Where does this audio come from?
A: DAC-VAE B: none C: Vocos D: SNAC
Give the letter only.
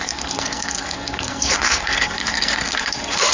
D